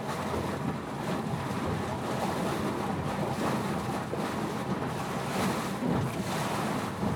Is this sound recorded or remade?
recorded